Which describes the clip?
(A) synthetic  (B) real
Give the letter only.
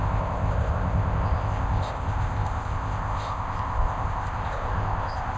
A